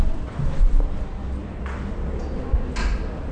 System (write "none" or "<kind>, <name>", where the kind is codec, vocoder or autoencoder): none